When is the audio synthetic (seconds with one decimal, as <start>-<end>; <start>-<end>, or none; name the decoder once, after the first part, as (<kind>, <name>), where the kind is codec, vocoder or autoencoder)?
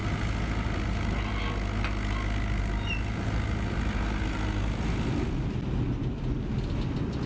none